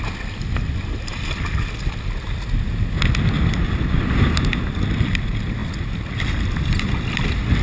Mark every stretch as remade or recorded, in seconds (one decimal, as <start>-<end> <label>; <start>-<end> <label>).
0.0-7.6 recorded